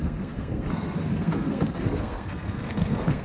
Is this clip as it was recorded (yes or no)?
no